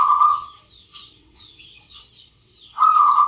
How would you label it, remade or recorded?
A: remade